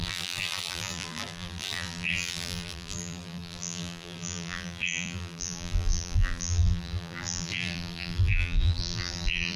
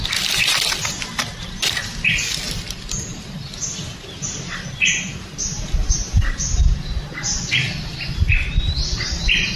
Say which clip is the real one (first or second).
second